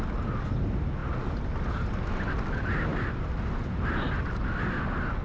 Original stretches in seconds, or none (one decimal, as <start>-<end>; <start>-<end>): 0.0-5.2